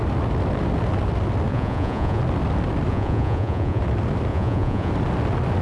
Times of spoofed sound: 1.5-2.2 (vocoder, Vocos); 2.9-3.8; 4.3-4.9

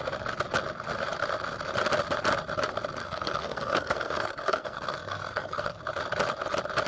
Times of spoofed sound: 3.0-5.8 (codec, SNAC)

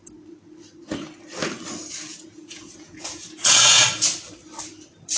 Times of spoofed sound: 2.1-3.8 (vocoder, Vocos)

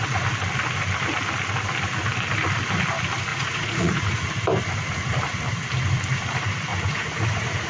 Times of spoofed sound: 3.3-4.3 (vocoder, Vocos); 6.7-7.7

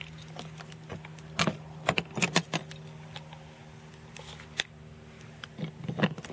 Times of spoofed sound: none

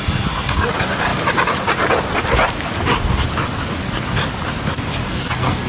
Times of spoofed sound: 5.0-5.7 (codec, SNAC)

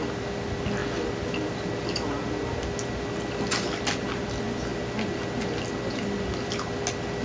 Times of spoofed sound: none